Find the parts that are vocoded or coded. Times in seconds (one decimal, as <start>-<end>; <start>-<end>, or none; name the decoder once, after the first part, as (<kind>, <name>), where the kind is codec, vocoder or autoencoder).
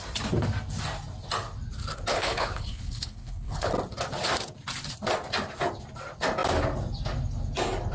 2.1-3.7 (codec, HILCodec)